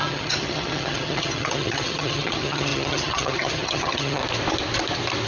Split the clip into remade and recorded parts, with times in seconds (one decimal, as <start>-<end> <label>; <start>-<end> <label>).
0.0-4.2 remade; 4.2-5.3 recorded